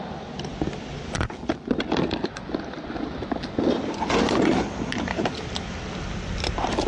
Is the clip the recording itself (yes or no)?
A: yes